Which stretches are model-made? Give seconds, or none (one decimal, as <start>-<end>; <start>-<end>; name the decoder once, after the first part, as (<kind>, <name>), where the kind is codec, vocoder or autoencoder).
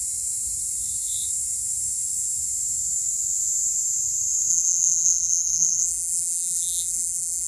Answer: 4.5-7.5 (vocoder, BigVGAN v2)